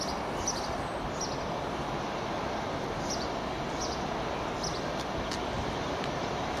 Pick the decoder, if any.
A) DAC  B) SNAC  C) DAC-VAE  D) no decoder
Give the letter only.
D